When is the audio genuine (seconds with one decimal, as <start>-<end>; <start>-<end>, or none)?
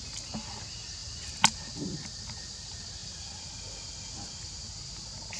0.0-1.0; 1.7-3.0; 4.6-5.4